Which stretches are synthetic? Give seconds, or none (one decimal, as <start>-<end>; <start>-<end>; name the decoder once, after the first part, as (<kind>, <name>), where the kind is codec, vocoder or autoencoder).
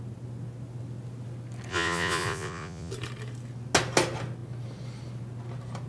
1.7-2.9 (vocoder, Vocos)